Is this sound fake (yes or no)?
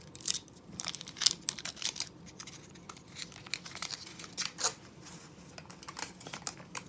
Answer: no